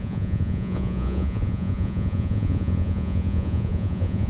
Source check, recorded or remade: remade